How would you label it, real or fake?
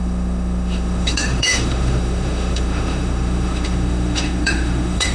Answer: fake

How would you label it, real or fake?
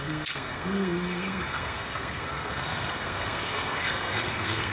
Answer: fake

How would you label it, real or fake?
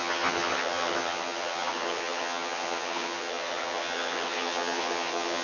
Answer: fake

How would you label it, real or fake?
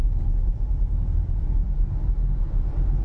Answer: real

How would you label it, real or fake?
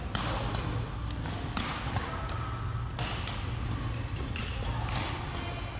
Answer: real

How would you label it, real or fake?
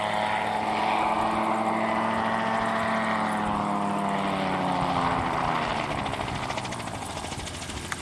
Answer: real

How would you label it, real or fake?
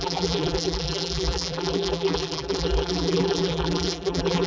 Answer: fake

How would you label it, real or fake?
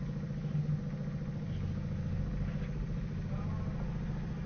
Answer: real